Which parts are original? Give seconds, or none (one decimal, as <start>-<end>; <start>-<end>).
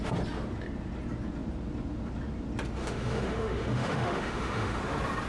0.0-2.8; 4.8-5.3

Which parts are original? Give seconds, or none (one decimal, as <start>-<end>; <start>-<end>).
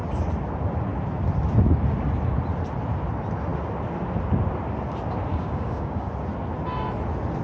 0.0-5.3; 6.1-7.4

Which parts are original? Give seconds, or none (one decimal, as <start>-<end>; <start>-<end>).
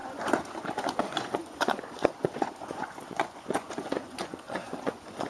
none